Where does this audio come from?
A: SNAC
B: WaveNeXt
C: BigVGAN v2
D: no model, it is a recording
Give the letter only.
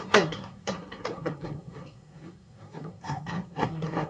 A